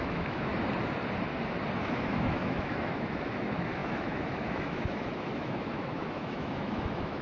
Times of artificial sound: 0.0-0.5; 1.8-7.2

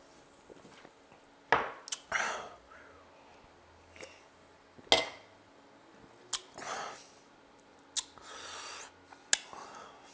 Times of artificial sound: none

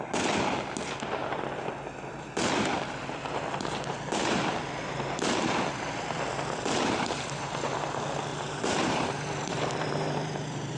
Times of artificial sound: 8.3-10.8

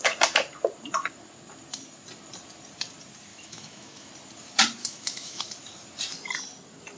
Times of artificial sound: 3.3-4.1; 4.8-5.4

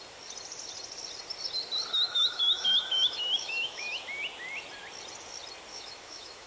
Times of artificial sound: 1.9-4.0; 5.7-6.5

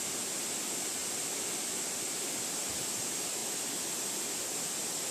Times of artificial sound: none

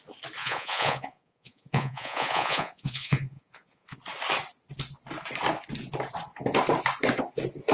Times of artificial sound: 0.4-4.0

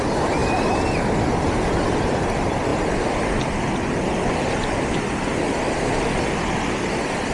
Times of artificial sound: none